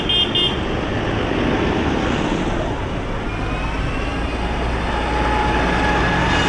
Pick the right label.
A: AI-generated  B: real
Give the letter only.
B